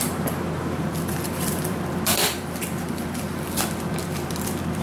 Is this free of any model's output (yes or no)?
no